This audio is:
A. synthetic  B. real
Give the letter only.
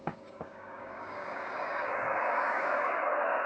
A